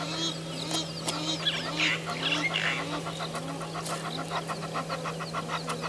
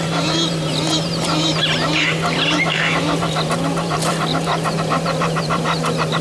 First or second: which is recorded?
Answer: first